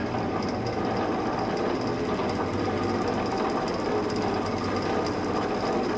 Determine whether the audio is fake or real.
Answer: real